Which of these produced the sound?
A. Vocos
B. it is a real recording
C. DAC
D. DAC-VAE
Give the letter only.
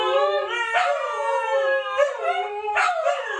B